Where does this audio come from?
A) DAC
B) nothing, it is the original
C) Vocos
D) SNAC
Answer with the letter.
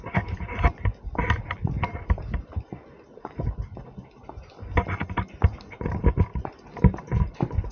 B